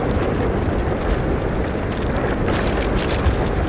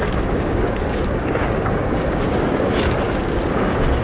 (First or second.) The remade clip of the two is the second